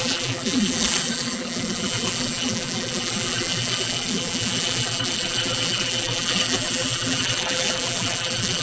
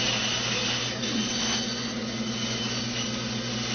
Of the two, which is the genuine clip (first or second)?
second